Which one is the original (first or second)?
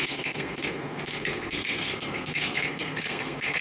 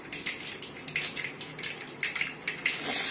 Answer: second